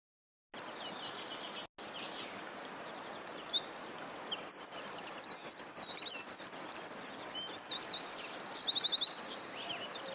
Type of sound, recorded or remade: recorded